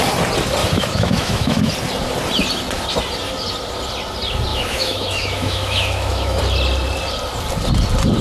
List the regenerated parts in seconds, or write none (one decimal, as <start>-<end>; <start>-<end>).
0.6-1.7; 4.5-6.4